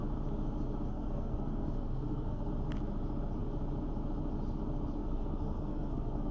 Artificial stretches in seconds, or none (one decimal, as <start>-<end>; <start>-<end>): 0.9-2.5; 5.0-6.3